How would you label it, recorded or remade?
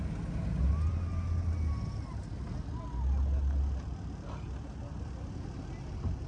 recorded